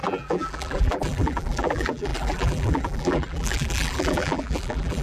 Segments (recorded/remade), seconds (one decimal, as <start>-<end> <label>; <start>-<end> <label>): 0.0-5.0 remade

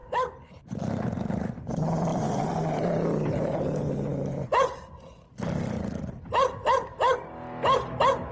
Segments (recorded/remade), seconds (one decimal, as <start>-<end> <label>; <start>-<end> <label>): 0.0-0.9 remade; 0.9-2.1 recorded; 2.1-3.6 remade; 3.6-8.3 recorded

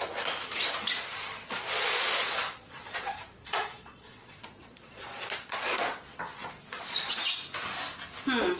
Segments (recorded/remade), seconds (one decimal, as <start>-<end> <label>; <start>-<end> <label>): 0.0-1.1 recorded; 1.1-6.0 remade; 6.0-6.4 recorded; 6.4-7.2 remade; 7.2-8.6 recorded

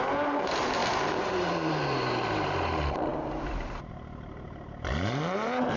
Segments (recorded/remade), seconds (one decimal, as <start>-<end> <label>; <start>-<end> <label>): 0.0-0.8 remade; 0.8-1.3 recorded; 1.3-5.8 remade

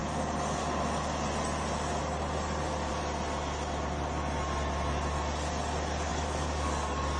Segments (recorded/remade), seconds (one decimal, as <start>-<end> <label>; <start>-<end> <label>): 0.0-6.1 recorded; 6.1-7.2 remade

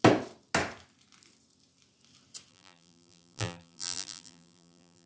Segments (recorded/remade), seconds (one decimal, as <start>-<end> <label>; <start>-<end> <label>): 0.0-2.5 recorded; 2.5-5.1 remade

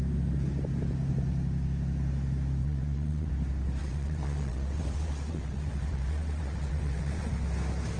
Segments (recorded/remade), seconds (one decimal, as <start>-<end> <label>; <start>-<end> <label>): 0.0-2.6 recorded; 2.6-3.3 remade; 3.3-3.8 recorded; 3.8-7.3 remade; 7.3-8.0 recorded

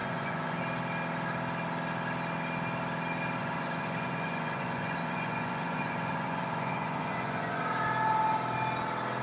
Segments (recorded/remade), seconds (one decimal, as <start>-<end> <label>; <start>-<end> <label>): 0.0-0.6 remade; 0.6-3.4 recorded; 3.4-7.6 remade; 7.6-9.2 recorded